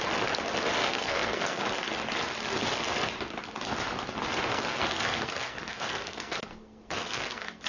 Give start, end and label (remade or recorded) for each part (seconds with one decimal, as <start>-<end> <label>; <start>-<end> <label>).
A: 0.0-0.8 recorded; 0.8-1.6 remade; 1.6-4.5 recorded; 4.5-7.7 remade